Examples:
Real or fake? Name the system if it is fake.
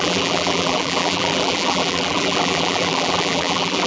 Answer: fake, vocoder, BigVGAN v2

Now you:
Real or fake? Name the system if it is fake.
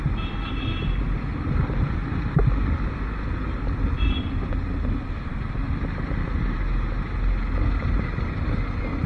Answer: real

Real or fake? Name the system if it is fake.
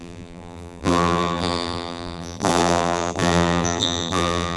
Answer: fake, vocoder, BigVGAN v2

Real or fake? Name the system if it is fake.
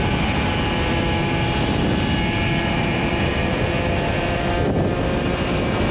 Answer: real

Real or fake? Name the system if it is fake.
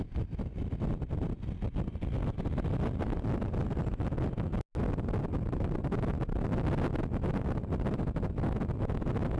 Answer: real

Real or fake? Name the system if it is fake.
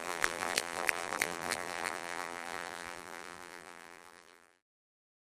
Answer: fake, vocoder, BigVGAN v2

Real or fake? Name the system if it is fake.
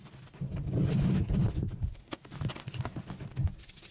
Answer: real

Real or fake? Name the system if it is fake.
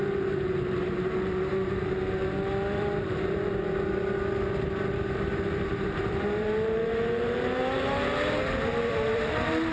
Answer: fake, vocoder, BigVGAN v2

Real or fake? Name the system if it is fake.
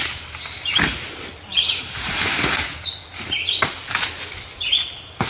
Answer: real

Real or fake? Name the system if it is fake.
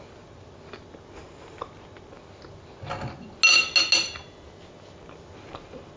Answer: real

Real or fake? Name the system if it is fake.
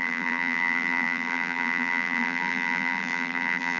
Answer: fake, vocoder, BigVGAN v2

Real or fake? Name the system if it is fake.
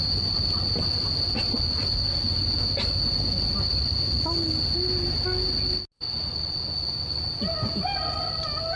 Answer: real